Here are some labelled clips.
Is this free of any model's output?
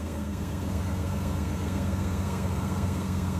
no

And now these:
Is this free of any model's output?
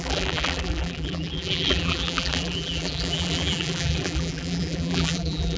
no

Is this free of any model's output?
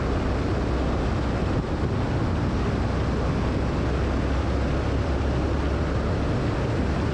yes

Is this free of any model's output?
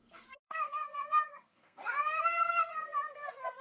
no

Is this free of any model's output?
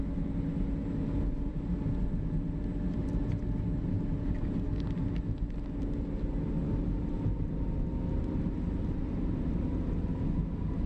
yes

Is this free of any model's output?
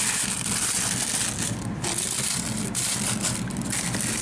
no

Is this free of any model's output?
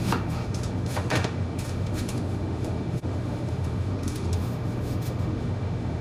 no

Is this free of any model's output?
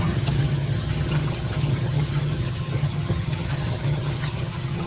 no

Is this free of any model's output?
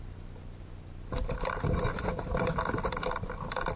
yes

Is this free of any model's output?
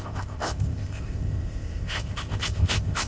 no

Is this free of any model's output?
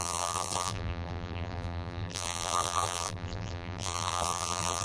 no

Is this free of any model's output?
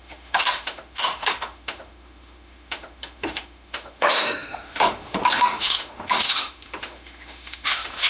no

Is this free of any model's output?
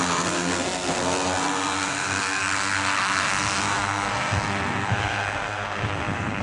no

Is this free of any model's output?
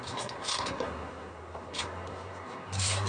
no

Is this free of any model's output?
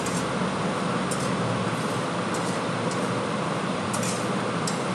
no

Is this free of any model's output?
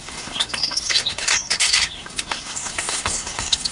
no